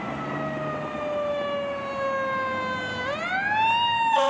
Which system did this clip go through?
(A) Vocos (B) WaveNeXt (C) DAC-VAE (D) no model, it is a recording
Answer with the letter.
D